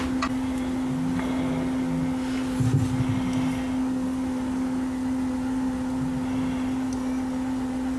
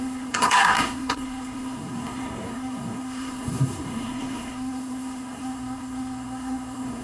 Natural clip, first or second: first